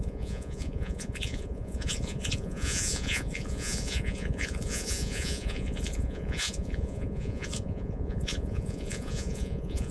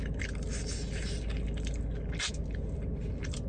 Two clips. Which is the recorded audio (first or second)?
second